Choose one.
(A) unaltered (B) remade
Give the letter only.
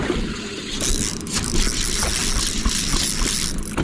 A